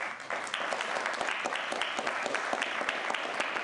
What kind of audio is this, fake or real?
real